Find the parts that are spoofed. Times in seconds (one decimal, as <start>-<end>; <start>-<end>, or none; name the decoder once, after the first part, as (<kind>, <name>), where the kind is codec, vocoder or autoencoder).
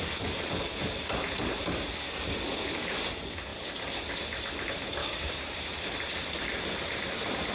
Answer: 5.0-5.6 (codec, DAC)